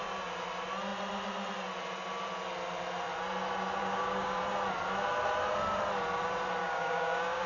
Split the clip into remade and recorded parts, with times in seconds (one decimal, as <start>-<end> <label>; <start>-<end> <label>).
0.0-3.8 recorded; 3.8-4.4 remade; 4.4-6.6 recorded; 6.6-7.5 remade